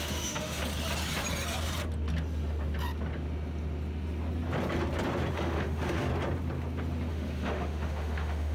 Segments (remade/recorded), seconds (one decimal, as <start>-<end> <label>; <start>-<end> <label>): 0.0-0.6 remade; 0.6-5.3 recorded; 5.3-6.1 remade; 6.1-7.1 recorded; 7.1-8.5 remade